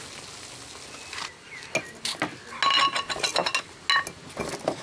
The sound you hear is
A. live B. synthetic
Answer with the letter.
A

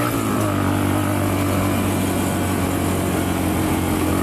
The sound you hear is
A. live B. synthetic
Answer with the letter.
A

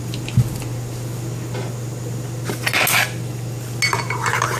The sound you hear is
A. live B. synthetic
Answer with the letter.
A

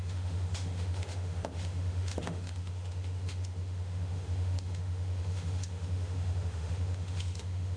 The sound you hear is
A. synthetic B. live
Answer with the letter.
A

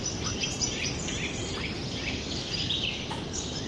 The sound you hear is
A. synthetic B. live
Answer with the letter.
A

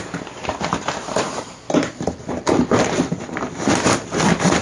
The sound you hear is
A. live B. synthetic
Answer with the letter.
A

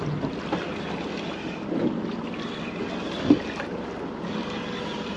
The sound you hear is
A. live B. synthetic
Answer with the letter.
A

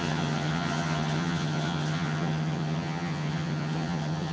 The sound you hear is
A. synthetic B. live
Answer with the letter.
A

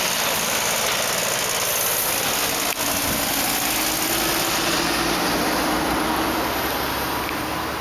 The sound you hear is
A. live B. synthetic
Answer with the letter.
A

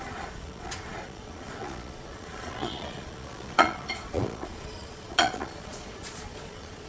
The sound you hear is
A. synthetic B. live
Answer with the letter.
A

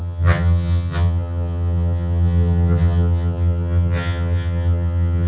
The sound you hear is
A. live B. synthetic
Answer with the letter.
B